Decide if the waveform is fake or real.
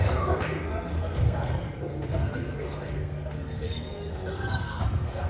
fake